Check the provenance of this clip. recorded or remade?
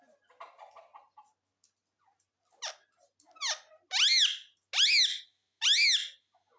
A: recorded